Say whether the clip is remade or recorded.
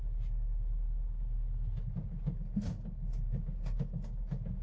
recorded